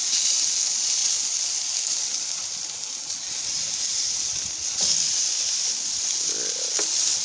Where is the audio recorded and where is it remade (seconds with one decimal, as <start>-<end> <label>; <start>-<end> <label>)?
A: 0.0-7.2 recorded